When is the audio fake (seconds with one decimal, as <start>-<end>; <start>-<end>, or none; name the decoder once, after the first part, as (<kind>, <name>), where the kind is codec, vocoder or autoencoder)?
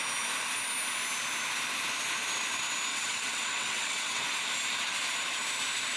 2.9-4.2 (vocoder, WaveNeXt)